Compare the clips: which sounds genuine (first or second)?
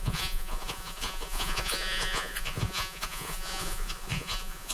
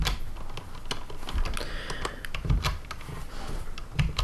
second